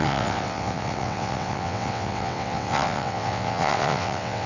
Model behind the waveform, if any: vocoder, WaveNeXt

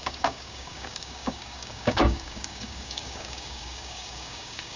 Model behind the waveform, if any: codec, DAC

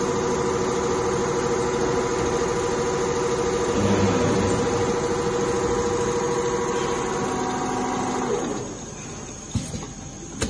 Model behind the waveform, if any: none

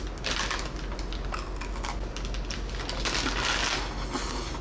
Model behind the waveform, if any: none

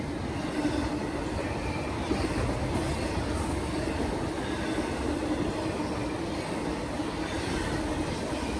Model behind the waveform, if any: none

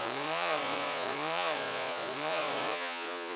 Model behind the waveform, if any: vocoder, Vocos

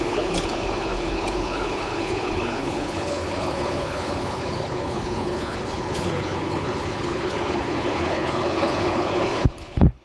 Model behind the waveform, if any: codec, HILCodec